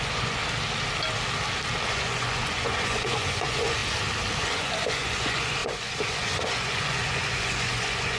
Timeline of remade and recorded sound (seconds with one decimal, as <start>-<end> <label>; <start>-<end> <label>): 0.0-0.4 remade; 0.4-1.9 recorded; 1.9-3.8 remade; 3.8-4.4 recorded; 4.4-8.2 remade